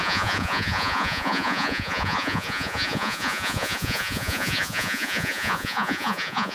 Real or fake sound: fake